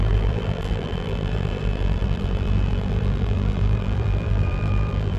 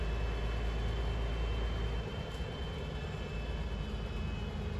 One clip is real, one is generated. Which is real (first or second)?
second